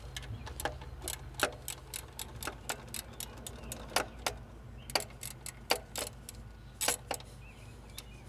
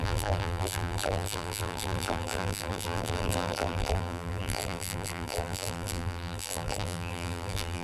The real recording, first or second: first